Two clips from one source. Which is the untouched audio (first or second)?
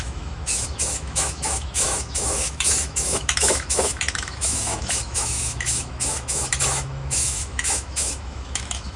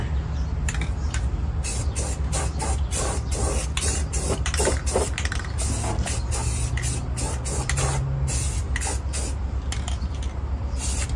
second